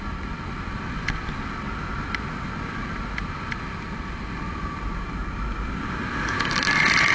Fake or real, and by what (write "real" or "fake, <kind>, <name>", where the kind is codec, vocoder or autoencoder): real